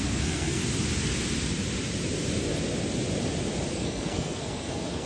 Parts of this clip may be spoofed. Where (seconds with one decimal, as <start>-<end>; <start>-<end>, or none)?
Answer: 0.0-0.6; 3.7-5.1